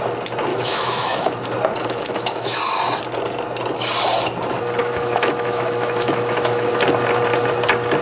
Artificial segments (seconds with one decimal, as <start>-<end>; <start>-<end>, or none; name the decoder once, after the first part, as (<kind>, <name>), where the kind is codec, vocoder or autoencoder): 0.5-1.3 (autoencoder, DAC-VAE); 1.8-2.6; 4.8-6.7